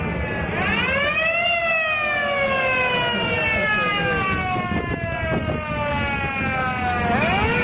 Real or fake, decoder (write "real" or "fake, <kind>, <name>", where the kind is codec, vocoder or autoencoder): real